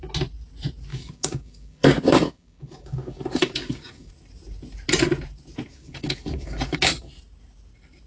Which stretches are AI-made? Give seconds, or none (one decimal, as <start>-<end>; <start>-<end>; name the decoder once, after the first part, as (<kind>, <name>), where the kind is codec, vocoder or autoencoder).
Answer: 0.9-4.1 (codec, DAC); 5.7-7.1